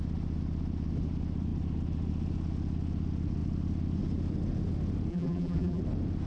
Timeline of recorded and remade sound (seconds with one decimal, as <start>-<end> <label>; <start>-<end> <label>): 0.0-5.1 recorded; 5.1-5.8 remade; 5.8-6.3 recorded